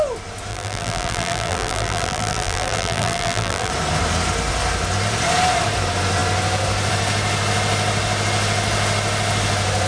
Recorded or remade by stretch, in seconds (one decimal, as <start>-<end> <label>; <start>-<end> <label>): 0.0-0.5 recorded; 0.5-3.7 remade; 3.7-9.9 recorded